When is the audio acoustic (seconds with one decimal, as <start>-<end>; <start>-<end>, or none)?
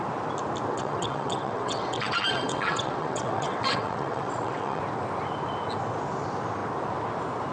0.0-0.7; 4.8-7.5